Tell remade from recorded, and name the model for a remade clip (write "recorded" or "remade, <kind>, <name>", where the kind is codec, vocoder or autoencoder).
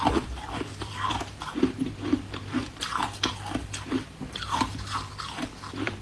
remade, vocoder, BigVGAN v2